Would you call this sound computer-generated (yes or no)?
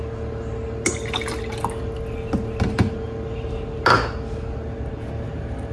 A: no